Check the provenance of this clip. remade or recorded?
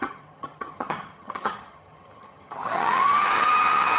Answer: remade